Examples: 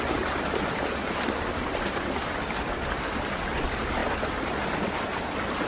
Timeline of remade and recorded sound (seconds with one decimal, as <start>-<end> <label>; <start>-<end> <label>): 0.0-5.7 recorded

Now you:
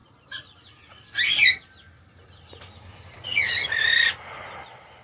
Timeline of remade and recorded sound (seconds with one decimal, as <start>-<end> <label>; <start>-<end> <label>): 0.0-0.8 remade; 0.8-5.0 recorded

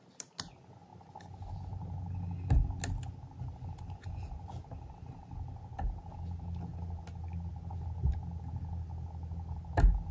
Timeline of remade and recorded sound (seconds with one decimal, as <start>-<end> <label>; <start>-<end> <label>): 0.0-10.1 recorded